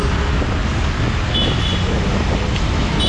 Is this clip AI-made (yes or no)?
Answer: no